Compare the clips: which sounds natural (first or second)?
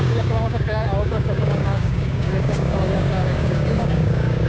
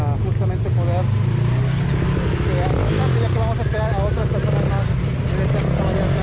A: second